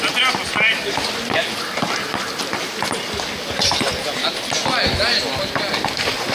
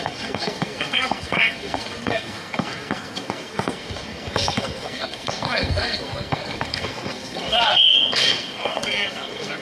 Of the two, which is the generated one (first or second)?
second